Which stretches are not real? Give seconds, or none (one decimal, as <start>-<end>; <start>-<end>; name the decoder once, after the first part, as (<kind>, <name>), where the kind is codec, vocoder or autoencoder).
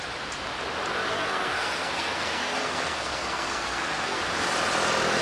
1.1-4.2 (codec, SNAC)